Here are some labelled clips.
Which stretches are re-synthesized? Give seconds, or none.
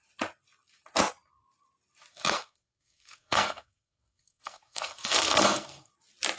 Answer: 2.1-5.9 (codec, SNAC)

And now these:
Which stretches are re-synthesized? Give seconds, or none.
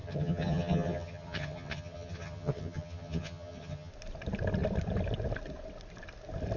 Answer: 0.0-3.9 (vocoder, HiFi-GAN)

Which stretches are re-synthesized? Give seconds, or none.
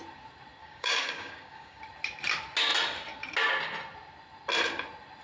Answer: 0.6-1.8 (codec, DAC)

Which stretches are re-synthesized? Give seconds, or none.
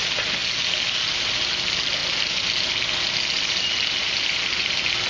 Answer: none